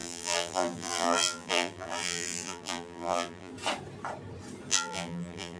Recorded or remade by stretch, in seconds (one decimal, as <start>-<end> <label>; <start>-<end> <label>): 0.0-3.5 remade; 3.5-4.7 recorded; 4.7-5.6 remade